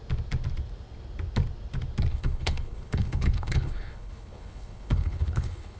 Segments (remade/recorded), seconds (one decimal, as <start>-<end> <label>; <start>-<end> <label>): 0.0-2.1 recorded; 2.1-5.8 remade